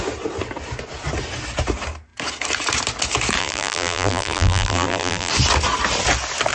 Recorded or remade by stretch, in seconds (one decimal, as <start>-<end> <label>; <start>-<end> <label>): 0.0-3.4 recorded; 3.4-5.3 remade; 5.3-6.5 recorded